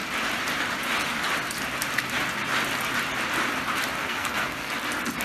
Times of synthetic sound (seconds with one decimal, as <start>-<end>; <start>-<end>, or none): 4.0-4.7